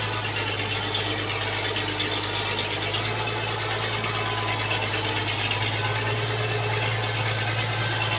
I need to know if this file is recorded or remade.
recorded